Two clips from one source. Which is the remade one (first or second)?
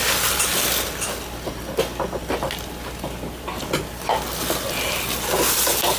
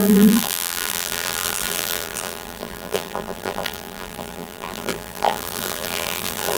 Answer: second